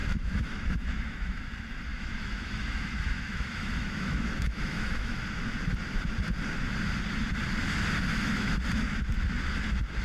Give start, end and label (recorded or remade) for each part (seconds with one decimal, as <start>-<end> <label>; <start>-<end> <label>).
0.0-1.5 remade; 1.5-1.9 recorded; 1.9-5.2 remade; 5.2-8.1 recorded; 8.1-8.6 remade; 8.6-10.0 recorded